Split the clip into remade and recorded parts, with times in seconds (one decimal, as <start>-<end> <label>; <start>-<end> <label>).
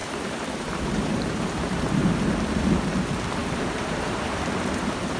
0.0-2.2 remade; 2.2-3.4 recorded; 3.4-4.4 remade; 4.4-5.2 recorded